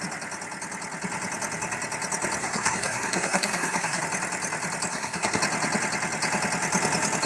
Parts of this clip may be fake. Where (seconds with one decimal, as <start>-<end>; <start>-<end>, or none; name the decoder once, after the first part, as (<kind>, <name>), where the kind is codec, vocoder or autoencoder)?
2.4-4.0 (codec, SNAC); 4.9-5.4